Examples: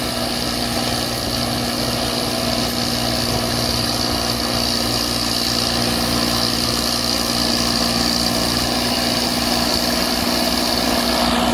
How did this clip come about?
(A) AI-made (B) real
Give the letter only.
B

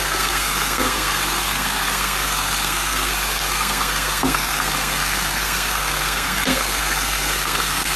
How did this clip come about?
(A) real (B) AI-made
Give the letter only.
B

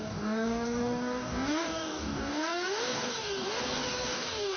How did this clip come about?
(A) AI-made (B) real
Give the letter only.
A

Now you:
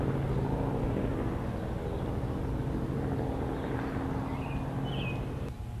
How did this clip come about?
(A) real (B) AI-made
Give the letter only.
A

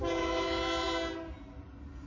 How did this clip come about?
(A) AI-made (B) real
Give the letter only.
B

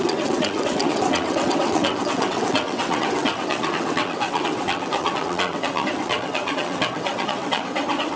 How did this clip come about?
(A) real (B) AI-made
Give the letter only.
B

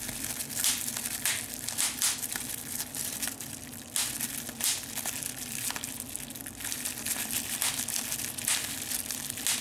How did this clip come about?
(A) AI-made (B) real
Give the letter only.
B